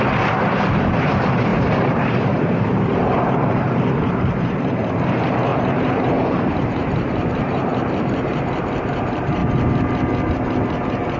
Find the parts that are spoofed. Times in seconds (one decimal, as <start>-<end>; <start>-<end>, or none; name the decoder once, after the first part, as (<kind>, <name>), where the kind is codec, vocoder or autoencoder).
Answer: 0.0-9.4 (vocoder, BigVGAN v2); 10.3-11.2

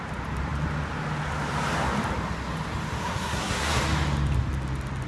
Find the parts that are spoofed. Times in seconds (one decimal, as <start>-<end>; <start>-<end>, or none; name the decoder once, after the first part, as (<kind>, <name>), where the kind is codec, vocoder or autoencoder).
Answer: 3.0-3.8 (codec, SNAC)

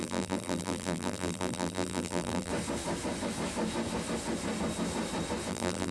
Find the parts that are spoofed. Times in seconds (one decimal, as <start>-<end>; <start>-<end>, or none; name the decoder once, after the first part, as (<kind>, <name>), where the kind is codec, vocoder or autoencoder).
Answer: 0.0-2.5 (vocoder, BigVGAN v2); 5.5-5.9

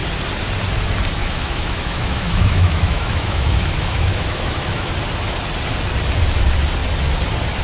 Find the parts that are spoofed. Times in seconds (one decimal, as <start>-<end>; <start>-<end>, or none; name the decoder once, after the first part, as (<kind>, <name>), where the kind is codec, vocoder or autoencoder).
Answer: 1.2-4.9 (autoencoder, DAC-VAE)

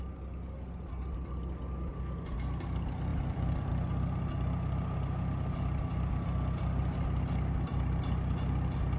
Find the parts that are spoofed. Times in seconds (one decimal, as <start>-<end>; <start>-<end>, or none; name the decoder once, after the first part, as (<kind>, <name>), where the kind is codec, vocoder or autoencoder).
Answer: 3.1-3.7 (vocoder, BigVGAN v2)